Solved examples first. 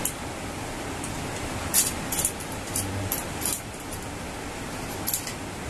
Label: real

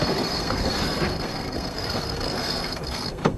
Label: fake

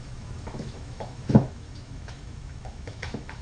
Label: fake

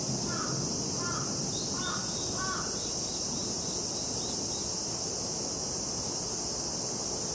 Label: real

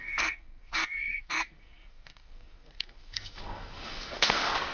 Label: fake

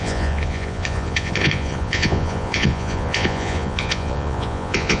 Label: fake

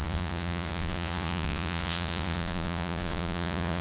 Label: fake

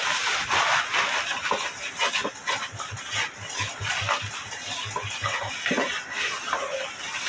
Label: real